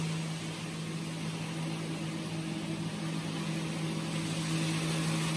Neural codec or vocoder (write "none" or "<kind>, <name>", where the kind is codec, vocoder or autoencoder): none